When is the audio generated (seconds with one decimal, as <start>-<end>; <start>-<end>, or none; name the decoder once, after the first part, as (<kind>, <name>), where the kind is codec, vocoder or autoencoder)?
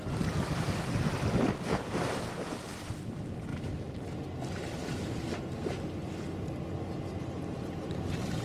none